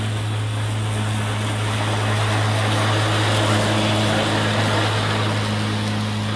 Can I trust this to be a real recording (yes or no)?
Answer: yes